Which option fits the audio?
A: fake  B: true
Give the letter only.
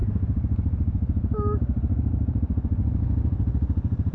B